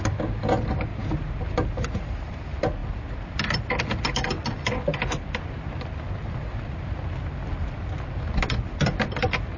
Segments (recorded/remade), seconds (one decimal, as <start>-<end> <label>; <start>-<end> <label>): 0.0-0.9 recorded; 0.9-2.4 remade; 2.4-4.9 recorded; 4.9-7.0 remade; 7.0-9.6 recorded